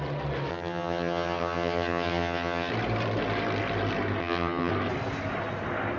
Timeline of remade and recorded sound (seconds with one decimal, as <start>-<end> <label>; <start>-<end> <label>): 0.0-0.5 recorded; 0.5-2.7 remade; 2.7-4.2 recorded; 4.2-4.7 remade; 4.7-6.0 recorded

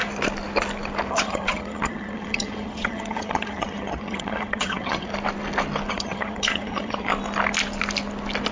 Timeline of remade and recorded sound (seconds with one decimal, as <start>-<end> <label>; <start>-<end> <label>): 0.0-1.1 recorded; 1.1-5.1 remade; 5.1-5.9 recorded; 5.9-7.1 remade; 7.1-8.5 recorded

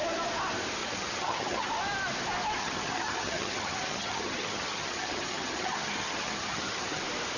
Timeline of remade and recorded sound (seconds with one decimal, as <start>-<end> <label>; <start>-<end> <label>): 0.0-0.8 recorded; 0.8-1.7 remade; 1.7-2.6 recorded; 2.6-7.0 remade; 7.0-7.4 recorded

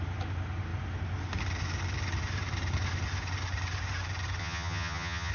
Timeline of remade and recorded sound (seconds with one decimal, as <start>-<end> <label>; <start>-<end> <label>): 0.0-4.4 recorded; 4.4-5.3 remade

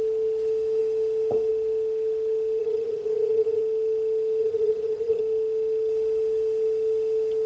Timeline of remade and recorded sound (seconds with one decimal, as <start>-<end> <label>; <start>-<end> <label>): 0.0-2.6 recorded; 2.6-3.6 remade; 3.6-4.4 recorded; 4.4-5.2 remade; 5.2-7.5 recorded